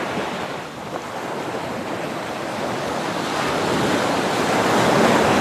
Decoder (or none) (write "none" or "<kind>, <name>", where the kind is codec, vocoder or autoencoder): none